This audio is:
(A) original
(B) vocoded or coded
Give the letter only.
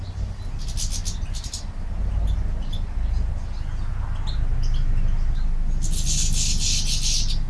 A